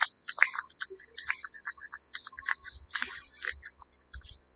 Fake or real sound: real